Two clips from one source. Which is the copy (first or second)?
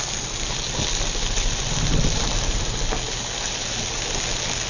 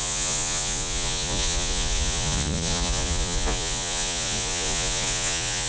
second